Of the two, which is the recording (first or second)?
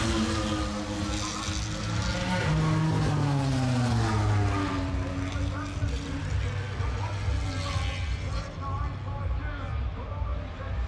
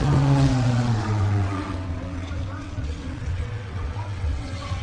first